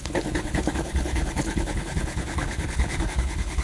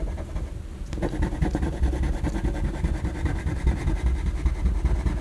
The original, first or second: second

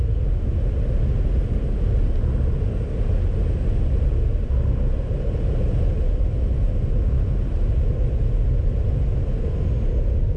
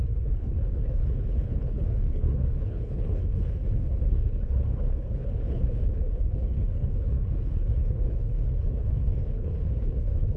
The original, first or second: first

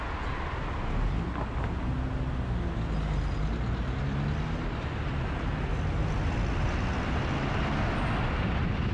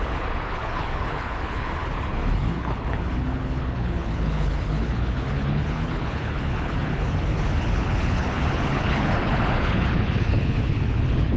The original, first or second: first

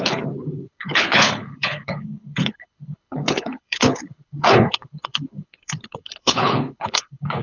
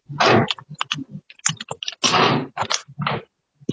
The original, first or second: second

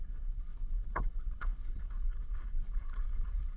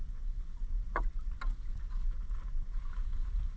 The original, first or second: second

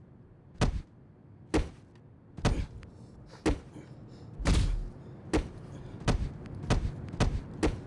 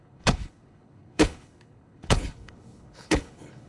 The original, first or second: first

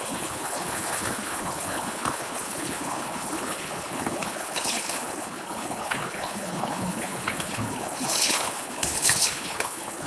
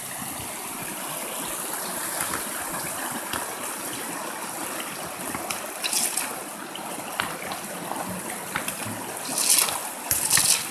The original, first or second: second